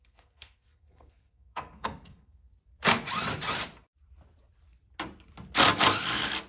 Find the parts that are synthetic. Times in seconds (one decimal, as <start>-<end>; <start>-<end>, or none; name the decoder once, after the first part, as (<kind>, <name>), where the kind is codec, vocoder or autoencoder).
0.0-2.5 (codec, SNAC)